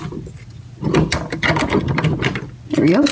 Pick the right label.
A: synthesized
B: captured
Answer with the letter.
B